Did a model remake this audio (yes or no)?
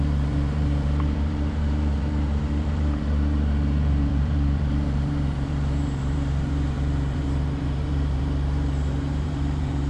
yes